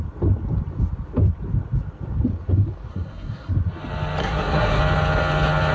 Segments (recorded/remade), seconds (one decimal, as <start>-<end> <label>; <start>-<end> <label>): 0.0-2.9 recorded; 2.9-3.5 remade; 3.5-4.2 recorded; 4.2-4.8 remade; 4.8-5.7 recorded